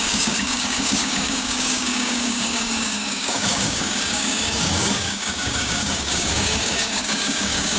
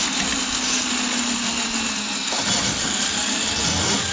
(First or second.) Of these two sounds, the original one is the second